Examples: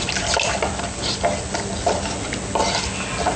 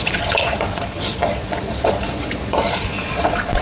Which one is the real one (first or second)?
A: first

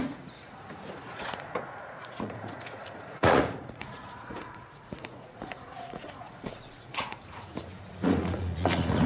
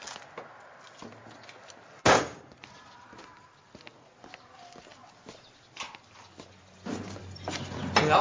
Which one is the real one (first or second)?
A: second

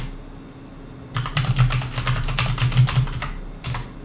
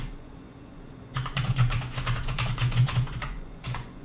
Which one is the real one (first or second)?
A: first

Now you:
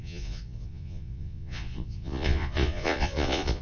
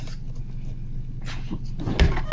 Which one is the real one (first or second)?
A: second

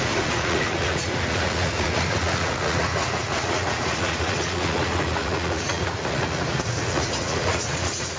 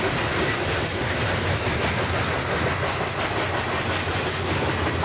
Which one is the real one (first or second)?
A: second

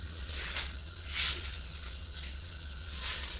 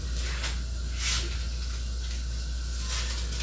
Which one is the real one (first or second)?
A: second